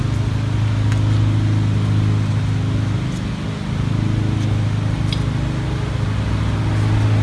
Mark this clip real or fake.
real